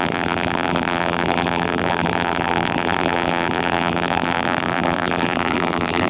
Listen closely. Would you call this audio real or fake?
fake